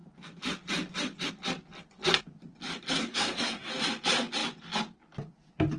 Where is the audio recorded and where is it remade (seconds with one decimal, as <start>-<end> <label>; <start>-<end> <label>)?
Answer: 0.0-3.0 recorded; 3.0-3.7 remade; 3.7-5.8 recorded